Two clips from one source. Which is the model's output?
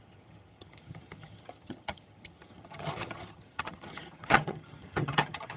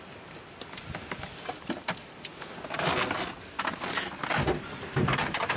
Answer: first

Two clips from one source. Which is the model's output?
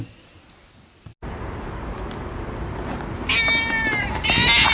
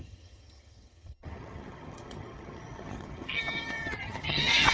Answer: second